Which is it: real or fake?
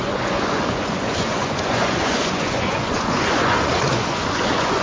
fake